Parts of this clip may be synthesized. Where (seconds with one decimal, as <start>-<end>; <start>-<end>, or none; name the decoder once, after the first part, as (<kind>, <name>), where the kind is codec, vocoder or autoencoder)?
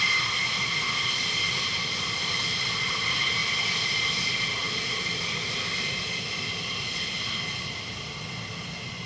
0.4-2.4 (vocoder, BigVGAN v2); 3.4-8.0